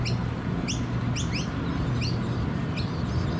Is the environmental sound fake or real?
real